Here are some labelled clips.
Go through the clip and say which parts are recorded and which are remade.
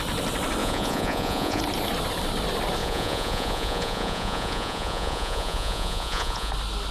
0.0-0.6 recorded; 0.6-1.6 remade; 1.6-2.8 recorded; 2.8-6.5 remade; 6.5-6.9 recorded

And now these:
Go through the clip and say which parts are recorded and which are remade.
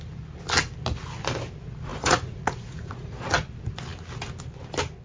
0.0-1.9 recorded; 1.9-3.1 remade; 3.1-5.0 recorded